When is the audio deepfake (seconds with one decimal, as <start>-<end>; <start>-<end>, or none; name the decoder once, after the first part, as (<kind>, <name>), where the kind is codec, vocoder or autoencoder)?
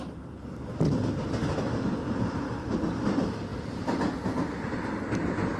none